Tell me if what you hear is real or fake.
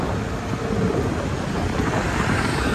real